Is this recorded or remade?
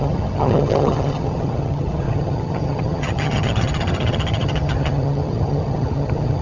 remade